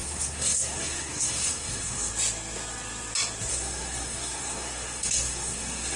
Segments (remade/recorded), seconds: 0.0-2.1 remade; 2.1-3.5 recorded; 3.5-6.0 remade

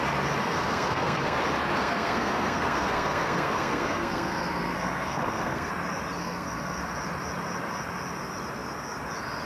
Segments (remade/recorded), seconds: 0.0-0.4 recorded; 0.4-1.4 remade; 1.4-1.8 recorded; 1.8-5.7 remade; 5.7-6.2 recorded; 6.2-6.8 remade; 6.8-9.5 recorded

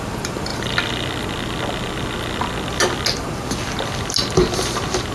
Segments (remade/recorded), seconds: 0.0-5.1 recorded

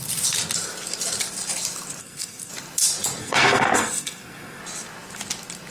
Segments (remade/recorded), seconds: 0.0-2.0 recorded; 2.0-2.5 remade; 2.5-3.2 recorded; 3.2-4.6 remade; 4.6-5.7 recorded

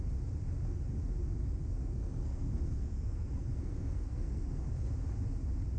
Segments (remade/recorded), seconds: 0.0-1.4 recorded; 1.4-4.9 remade; 4.9-5.8 recorded